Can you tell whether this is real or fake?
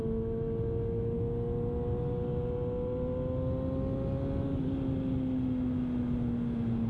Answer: real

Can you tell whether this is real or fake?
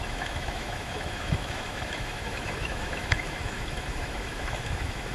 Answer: fake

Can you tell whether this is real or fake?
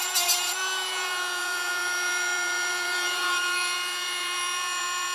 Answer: fake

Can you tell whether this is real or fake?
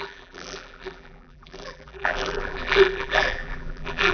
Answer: fake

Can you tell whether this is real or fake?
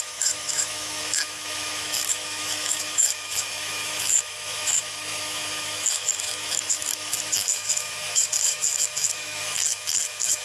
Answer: fake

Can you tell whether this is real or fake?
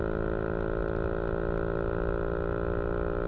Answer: real